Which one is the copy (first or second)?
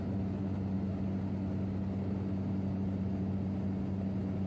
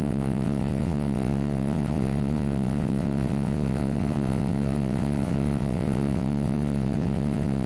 second